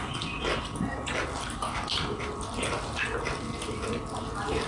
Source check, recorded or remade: recorded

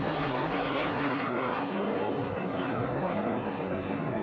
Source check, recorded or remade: remade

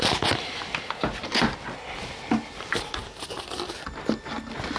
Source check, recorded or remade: recorded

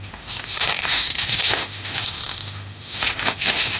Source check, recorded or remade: remade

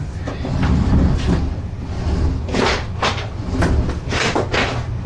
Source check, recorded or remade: recorded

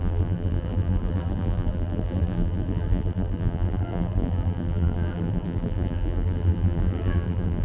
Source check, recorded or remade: remade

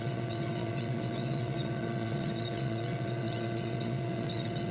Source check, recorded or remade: remade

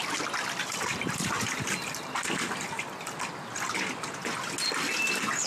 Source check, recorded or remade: recorded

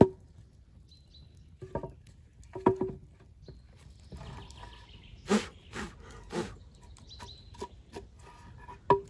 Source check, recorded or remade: recorded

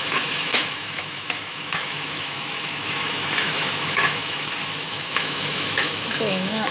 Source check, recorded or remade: remade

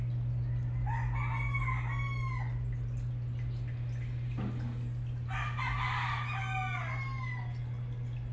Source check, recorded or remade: recorded